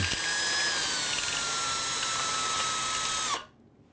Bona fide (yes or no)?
yes